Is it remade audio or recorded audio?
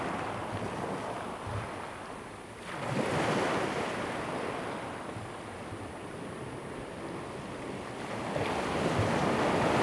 recorded